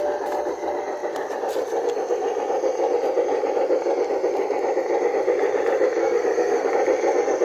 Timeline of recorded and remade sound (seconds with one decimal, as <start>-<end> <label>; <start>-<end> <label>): 0.0-6.0 recorded; 6.0-6.7 remade; 6.7-7.4 recorded